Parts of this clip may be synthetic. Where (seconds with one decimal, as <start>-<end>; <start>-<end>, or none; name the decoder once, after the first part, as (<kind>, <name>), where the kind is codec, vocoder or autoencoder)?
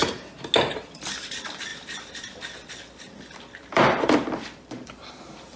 0.7-5.6 (vocoder, BigVGAN v2)